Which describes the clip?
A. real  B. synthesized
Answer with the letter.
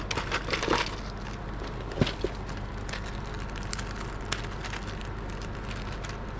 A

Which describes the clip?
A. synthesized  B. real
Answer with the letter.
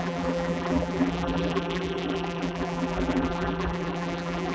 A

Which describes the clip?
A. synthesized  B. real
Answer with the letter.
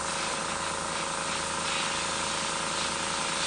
B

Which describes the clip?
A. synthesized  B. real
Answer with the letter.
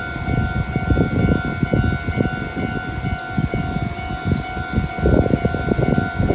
B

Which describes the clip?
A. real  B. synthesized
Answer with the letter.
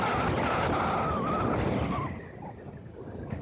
A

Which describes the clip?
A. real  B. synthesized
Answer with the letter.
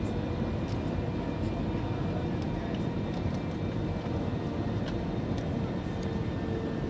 A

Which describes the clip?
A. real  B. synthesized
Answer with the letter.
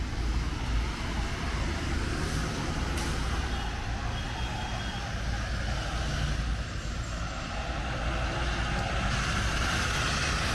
A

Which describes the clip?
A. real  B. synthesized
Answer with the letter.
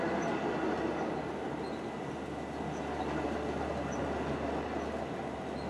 A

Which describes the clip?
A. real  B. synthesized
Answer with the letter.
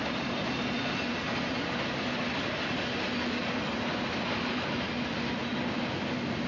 A